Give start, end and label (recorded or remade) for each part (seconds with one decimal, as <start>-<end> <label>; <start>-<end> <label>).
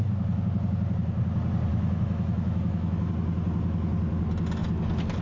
0.0-1.7 recorded; 1.7-3.1 remade; 3.1-5.2 recorded